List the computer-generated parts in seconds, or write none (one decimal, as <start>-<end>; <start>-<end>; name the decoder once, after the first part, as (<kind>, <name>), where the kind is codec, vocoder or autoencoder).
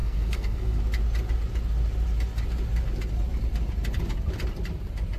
0.0-0.8 (codec, SNAC)